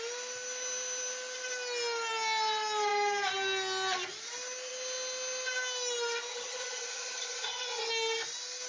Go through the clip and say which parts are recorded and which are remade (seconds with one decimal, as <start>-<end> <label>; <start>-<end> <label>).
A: 0.0-6.3 recorded; 6.3-7.9 remade; 7.9-8.7 recorded